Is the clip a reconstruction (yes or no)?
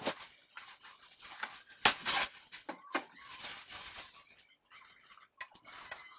no